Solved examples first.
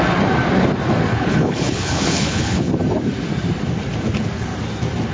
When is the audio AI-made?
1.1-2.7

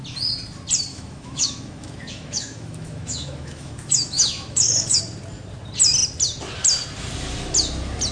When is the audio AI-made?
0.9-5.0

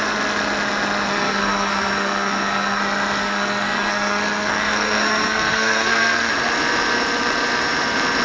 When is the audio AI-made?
1.1-2.8; 3.2-6.3